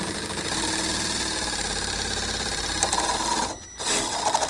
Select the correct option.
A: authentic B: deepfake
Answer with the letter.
A